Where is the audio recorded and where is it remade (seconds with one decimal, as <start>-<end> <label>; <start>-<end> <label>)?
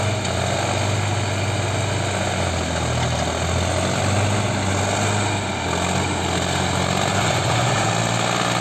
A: 0.0-7.1 recorded; 7.1-7.9 remade; 7.9-8.6 recorded